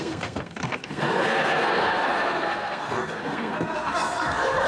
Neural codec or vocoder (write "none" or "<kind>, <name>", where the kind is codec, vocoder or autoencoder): codec, SNAC